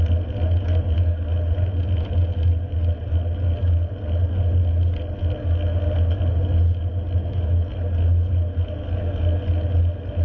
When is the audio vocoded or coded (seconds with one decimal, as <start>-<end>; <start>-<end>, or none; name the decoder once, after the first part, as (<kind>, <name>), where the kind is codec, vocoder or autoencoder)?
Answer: none